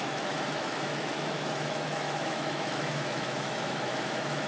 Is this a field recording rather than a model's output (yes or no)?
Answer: no